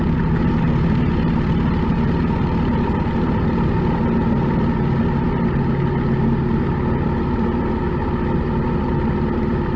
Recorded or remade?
recorded